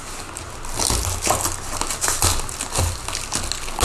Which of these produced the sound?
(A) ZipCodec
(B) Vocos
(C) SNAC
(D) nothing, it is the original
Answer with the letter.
D